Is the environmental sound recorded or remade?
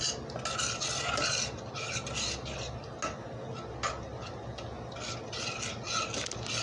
recorded